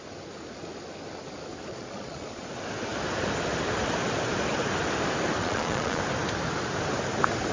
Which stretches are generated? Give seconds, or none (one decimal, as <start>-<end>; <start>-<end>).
1.7-2.5; 5.4-6.0